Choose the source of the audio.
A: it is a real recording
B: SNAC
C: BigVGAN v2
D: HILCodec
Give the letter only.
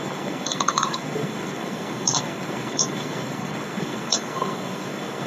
B